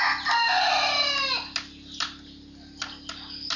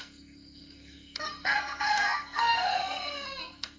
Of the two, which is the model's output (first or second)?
second